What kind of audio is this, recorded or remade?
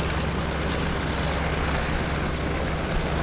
recorded